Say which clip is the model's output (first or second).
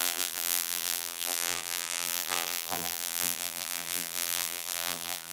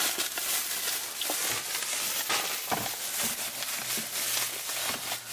first